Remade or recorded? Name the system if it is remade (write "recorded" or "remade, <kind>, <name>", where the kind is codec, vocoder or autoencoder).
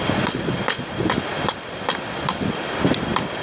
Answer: remade, vocoder, BigVGAN v2